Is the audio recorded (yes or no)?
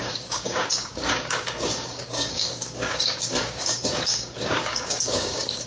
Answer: no